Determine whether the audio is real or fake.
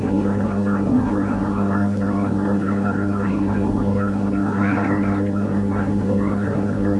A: fake